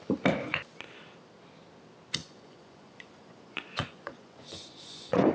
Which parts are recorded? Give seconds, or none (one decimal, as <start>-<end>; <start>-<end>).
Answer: 0.0-2.2